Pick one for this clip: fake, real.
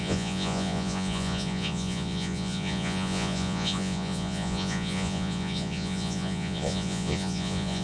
fake